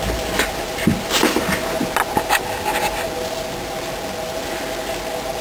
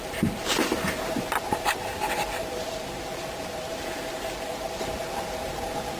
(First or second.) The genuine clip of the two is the first